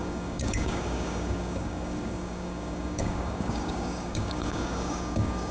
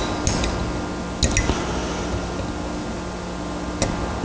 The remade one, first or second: first